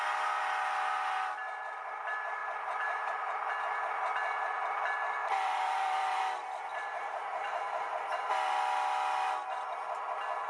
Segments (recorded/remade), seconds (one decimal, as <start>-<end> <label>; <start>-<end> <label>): 0.0-2.4 recorded; 2.4-3.5 remade; 3.5-5.2 recorded; 5.2-6.2 remade; 6.2-6.7 recorded; 6.7-8.1 remade; 8.1-10.5 recorded